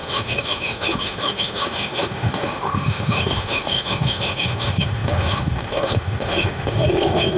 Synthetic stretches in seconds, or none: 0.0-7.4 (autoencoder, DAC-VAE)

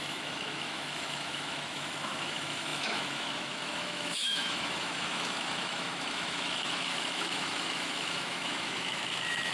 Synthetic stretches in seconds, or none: 0.0-9.5 (autoencoder, DAC-VAE)

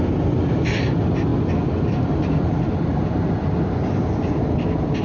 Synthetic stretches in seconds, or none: none

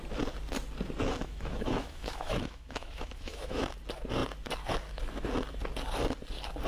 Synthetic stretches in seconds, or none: 1.2-3.6 (autoencoder, DAC-VAE)

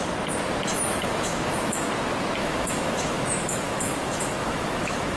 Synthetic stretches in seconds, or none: 0.7-1.9 (autoencoder, DAC-VAE); 2.4-5.2

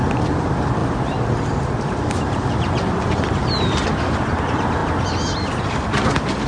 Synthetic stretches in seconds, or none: none

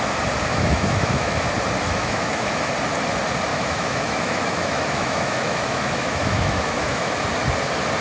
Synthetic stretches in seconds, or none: 0.5-1.5 (autoencoder, DAC-VAE); 1.9-2.7; 3.5-7.1